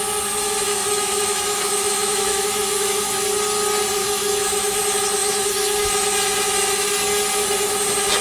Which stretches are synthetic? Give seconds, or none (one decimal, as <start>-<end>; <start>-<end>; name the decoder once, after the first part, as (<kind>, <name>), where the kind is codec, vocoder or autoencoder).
0.7-3.1 (autoencoder, DAC-VAE); 4.0-4.8; 5.2-5.9